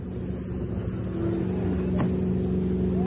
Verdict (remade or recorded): recorded